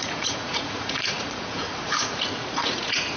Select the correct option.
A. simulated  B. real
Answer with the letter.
A